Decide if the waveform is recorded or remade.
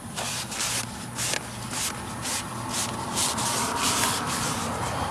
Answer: remade